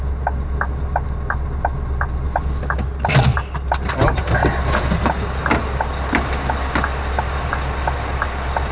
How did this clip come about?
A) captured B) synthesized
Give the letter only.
A